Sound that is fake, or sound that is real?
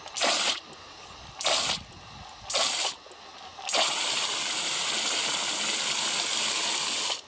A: real